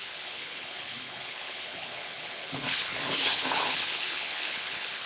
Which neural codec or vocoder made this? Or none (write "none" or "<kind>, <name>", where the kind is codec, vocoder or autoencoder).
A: codec, HILCodec